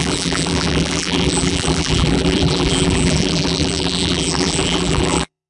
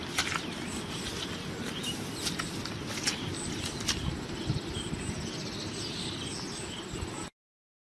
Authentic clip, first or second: second